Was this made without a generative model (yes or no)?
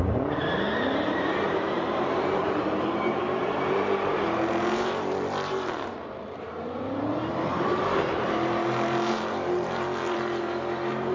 no